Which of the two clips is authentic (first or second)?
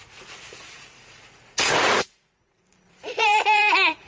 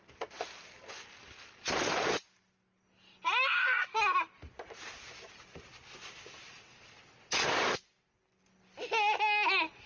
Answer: second